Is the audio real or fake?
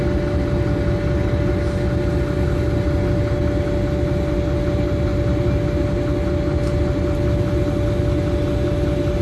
real